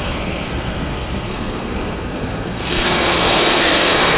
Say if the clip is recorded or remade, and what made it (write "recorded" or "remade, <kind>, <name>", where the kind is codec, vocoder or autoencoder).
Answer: remade, codec, SNAC